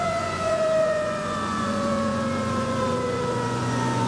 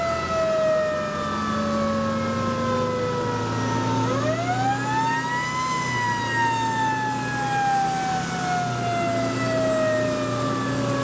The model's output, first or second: first